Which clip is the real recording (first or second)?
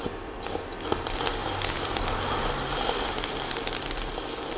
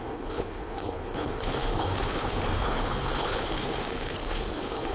first